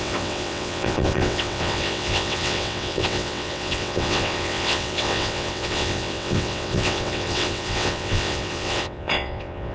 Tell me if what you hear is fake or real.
fake